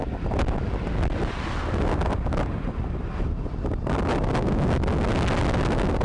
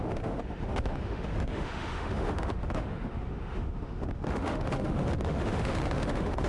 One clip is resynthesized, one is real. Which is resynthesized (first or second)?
second